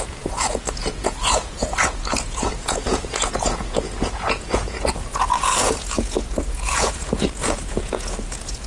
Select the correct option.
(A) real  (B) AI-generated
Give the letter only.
B